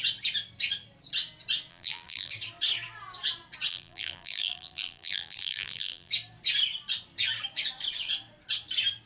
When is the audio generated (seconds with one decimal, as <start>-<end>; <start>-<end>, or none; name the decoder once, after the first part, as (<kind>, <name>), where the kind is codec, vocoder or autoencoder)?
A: 1.7-2.3 (vocoder, BigVGAN v2); 3.7-6.1